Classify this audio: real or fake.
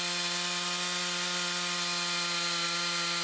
real